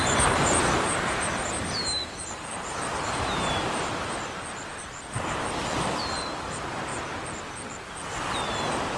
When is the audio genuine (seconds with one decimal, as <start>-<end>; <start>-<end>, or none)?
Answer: 2.2-2.9; 3.5-9.0